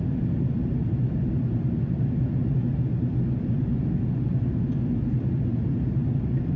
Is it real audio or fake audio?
real